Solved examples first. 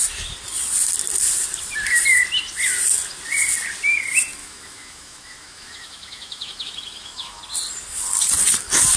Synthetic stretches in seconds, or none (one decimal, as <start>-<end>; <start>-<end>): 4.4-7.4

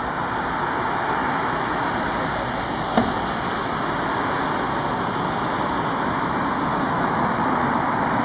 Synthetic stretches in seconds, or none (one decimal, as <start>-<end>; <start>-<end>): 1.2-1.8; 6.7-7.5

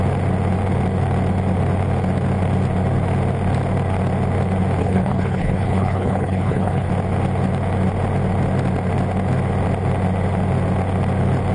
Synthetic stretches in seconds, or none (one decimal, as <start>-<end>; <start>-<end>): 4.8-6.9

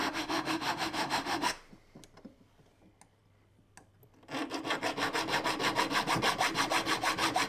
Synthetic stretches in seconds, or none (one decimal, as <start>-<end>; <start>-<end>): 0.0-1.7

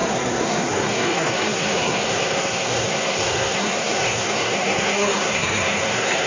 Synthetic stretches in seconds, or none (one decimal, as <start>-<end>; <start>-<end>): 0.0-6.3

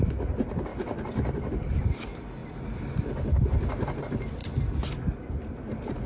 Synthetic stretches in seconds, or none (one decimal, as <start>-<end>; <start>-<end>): none

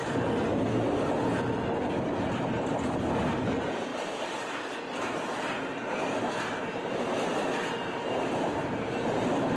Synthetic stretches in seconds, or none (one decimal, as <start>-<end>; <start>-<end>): 3.9-4.5

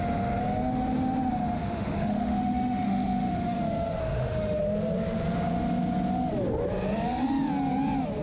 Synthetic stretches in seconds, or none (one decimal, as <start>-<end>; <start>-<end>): 1.6-3.6; 4.0-4.6